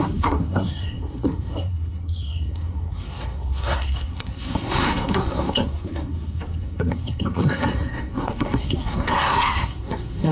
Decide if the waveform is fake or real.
fake